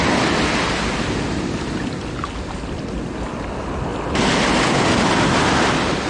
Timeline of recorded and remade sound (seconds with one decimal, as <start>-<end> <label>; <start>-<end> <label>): 0.0-6.1 recorded